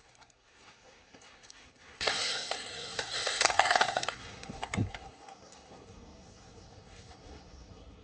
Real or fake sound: fake